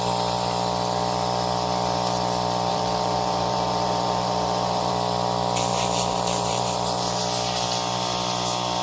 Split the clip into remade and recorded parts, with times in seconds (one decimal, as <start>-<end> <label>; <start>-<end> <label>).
0.0-2.7 recorded; 2.7-4.9 remade; 4.9-5.7 recorded; 5.7-7.2 remade; 7.2-8.8 recorded